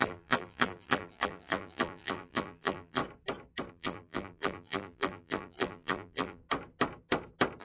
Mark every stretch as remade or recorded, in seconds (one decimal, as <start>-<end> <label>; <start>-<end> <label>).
0.0-3.0 remade; 3.0-3.7 recorded; 3.7-6.4 remade; 6.4-7.6 recorded

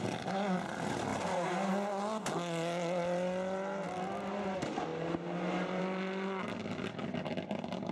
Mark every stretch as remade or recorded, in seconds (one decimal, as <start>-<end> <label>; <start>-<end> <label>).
0.0-7.9 recorded

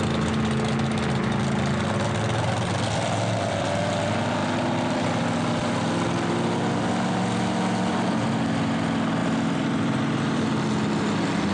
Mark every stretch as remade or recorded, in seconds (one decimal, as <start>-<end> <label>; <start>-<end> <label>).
0.0-9.2 recorded; 9.2-10.5 remade; 10.5-11.5 recorded

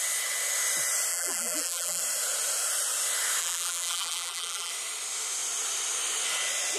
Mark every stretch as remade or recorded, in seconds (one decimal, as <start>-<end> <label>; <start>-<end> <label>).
0.0-1.1 recorded; 1.1-2.0 remade; 2.0-3.4 recorded; 3.4-4.7 remade; 4.7-6.8 recorded